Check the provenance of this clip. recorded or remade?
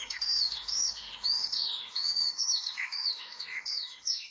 remade